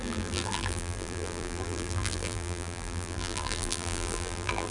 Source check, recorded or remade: remade